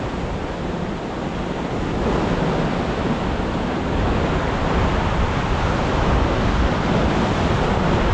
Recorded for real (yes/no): yes